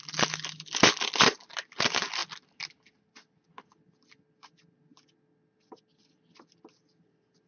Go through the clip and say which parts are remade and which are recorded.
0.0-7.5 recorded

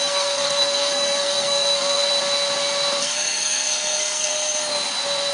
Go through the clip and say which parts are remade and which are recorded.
0.0-2.1 remade; 2.1-3.0 recorded; 3.0-4.3 remade; 4.3-5.3 recorded

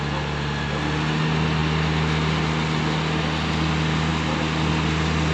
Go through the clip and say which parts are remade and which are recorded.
0.0-5.3 recorded

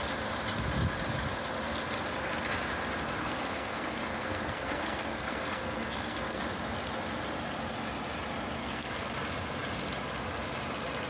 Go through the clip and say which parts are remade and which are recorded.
0.0-3.2 recorded; 3.2-6.4 remade; 6.4-8.6 recorded; 8.6-9.1 remade; 9.1-11.1 recorded